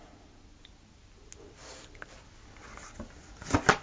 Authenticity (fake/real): real